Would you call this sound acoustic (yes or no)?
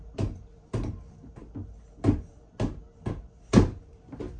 yes